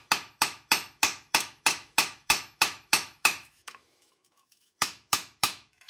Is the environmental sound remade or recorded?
remade